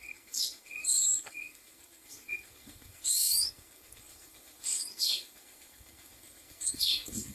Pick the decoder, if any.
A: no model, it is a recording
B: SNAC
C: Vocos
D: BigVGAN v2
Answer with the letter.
B